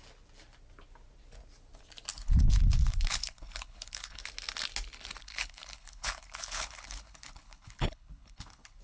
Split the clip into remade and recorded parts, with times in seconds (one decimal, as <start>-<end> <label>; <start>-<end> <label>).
0.0-2.1 recorded; 2.1-4.2 remade; 4.2-5.2 recorded; 5.2-8.8 remade

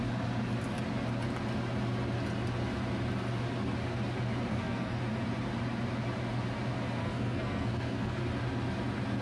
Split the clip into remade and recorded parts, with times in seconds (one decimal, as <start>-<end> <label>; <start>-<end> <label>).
0.0-4.5 recorded; 4.5-5.0 remade; 5.0-7.0 recorded; 7.0-8.2 remade; 8.2-9.2 recorded

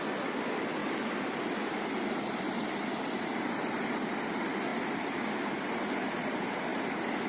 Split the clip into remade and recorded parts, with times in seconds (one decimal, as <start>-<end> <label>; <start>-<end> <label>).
0.0-0.8 recorded; 0.8-4.2 remade; 4.2-4.7 recorded; 4.7-5.2 remade; 5.2-7.3 recorded

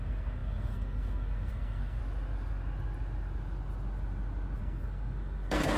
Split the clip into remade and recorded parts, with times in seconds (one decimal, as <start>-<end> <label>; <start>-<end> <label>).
0.0-2.0 remade; 2.0-4.6 recorded; 4.6-5.8 remade

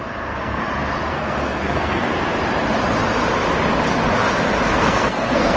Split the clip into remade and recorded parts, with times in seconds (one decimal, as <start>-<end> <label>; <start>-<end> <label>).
0.0-0.6 remade; 0.6-1.1 recorded; 1.1-2.1 remade; 2.1-4.7 recorded; 4.7-5.6 remade

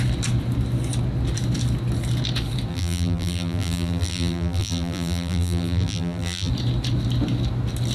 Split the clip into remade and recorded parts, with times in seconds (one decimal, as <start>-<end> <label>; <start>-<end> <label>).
0.0-2.7 recorded; 2.7-6.5 remade; 6.5-7.9 recorded

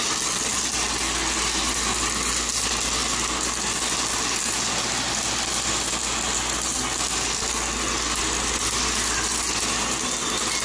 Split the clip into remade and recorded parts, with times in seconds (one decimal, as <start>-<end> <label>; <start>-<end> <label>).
0.0-10.6 recorded